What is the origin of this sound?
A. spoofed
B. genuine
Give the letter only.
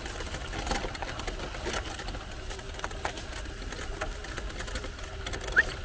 B